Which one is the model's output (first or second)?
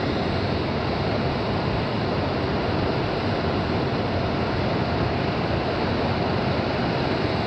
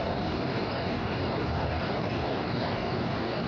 second